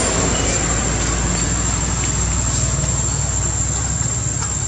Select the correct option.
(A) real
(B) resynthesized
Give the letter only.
A